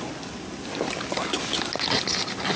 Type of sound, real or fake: real